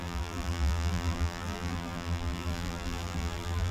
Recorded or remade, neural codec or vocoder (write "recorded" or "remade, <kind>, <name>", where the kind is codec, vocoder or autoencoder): remade, vocoder, BigVGAN v2